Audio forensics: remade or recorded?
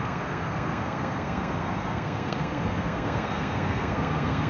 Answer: remade